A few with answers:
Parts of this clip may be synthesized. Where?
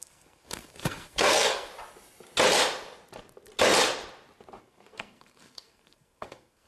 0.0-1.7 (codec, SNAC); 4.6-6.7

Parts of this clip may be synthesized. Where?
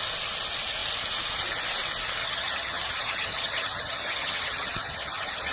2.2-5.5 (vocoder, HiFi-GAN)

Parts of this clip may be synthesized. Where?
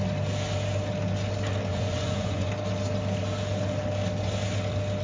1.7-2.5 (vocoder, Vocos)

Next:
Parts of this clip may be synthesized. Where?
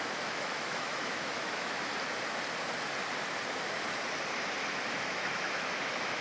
0.0-1.9 (autoencoder, DAC-VAE); 4.7-6.2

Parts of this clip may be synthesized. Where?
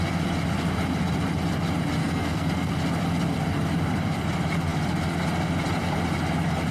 2.0-2.7 (codec, SNAC)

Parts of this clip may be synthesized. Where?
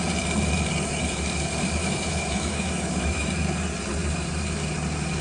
1.8-3.3 (autoencoder, DAC-VAE)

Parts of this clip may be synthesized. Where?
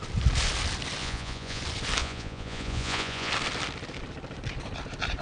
1.0-1.6 (vocoder, Vocos); 2.0-3.3